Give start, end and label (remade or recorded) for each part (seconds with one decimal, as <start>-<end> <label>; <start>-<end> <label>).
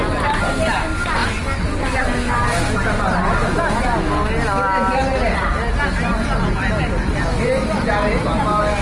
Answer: 0.0-8.8 recorded